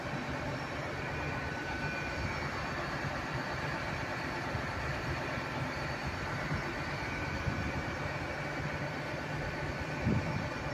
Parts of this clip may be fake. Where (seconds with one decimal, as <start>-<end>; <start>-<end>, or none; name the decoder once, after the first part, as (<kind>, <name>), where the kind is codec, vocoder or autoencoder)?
0.0-1.8 (vocoder, BigVGAN v2); 2.5-10.7